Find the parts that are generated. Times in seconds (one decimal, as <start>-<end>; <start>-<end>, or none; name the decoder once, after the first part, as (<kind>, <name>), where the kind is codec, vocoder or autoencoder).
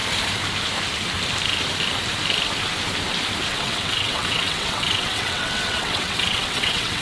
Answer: 3.5-7.0 (vocoder, WaveNeXt)